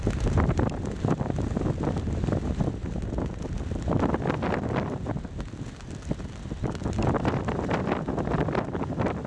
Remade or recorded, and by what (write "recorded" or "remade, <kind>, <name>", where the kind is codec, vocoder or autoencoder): recorded